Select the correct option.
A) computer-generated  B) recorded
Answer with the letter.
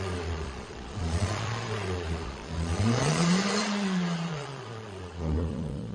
A